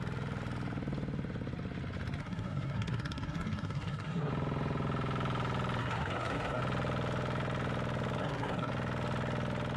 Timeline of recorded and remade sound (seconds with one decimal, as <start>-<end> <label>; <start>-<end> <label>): 0.0-2.2 recorded; 2.2-4.3 remade; 4.3-5.8 recorded; 5.8-6.6 remade; 6.6-8.2 recorded; 8.2-8.7 remade; 8.7-9.8 recorded